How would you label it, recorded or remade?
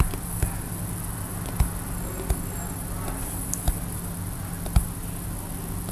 recorded